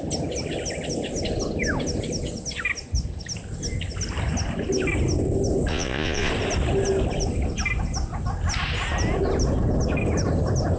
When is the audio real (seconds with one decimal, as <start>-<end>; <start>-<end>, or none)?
0.0-5.7; 6.3-10.8